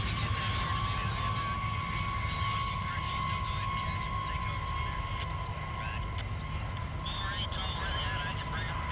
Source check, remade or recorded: recorded